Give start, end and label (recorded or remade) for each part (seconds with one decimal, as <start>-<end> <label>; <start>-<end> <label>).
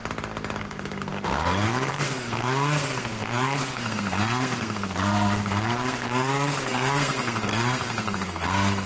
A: 0.0-0.6 recorded; 0.6-8.9 remade